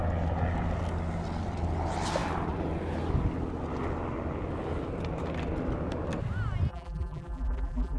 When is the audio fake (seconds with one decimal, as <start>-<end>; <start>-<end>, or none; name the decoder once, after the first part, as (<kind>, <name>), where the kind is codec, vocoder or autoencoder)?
6.7-8.0 (vocoder, BigVGAN v2)